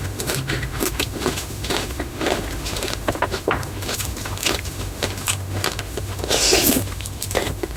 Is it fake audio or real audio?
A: fake